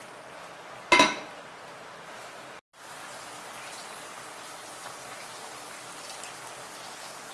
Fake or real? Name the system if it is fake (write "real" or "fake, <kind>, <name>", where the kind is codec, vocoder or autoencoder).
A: real